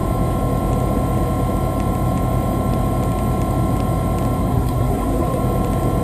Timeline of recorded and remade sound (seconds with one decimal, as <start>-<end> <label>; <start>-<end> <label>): 0.0-4.4 recorded; 4.4-5.4 remade; 5.4-6.0 recorded